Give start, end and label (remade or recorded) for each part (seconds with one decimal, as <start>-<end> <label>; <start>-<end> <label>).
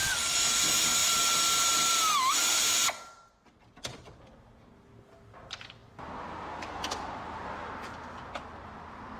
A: 0.0-9.2 recorded